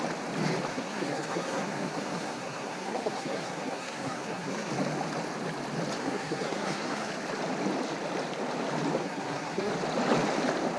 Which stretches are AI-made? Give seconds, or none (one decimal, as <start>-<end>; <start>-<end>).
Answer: 0.7-4.7; 6.0-7.1; 9.0-9.7